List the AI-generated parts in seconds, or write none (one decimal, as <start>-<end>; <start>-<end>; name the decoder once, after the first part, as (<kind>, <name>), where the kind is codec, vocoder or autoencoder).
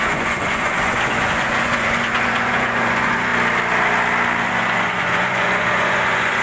0.0-3.3 (vocoder, Vocos); 4.4-6.4